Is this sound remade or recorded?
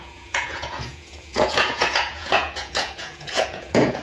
remade